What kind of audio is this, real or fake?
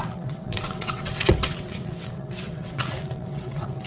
fake